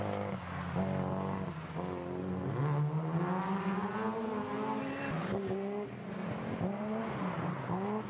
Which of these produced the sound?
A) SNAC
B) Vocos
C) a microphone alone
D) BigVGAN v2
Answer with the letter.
C